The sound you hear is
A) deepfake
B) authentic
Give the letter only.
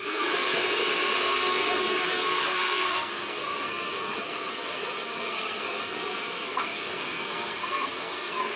A